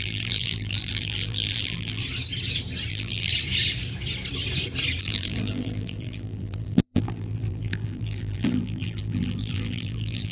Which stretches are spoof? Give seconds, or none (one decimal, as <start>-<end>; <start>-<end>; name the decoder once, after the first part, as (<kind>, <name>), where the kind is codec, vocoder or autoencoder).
0.0-2.0 (vocoder, BigVGAN v2); 2.9-3.3; 5.0-10.3